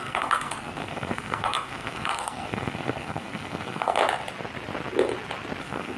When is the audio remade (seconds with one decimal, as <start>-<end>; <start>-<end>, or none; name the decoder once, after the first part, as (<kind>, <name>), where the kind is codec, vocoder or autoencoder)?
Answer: 0.0-4.0 (codec, SNAC); 5.6-6.0